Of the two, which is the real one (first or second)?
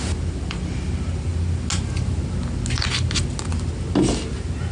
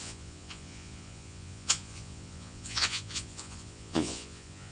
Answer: first